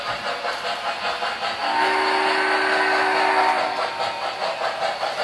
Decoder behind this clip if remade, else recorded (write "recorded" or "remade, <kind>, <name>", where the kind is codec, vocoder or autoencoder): recorded